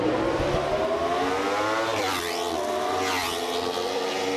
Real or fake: real